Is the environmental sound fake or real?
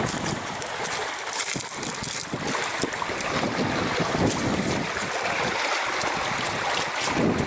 real